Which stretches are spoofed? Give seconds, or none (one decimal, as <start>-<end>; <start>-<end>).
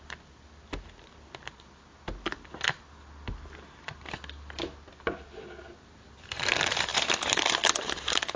6.9-7.9